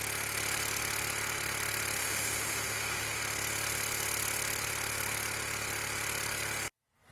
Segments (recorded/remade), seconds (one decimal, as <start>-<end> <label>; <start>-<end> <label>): 0.0-2.0 recorded; 2.0-3.2 remade; 3.2-7.1 recorded